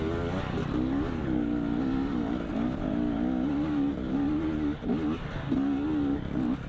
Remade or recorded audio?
recorded